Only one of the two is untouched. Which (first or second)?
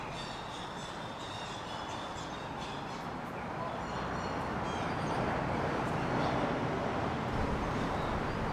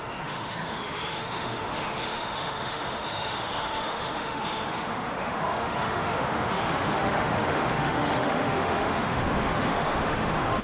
first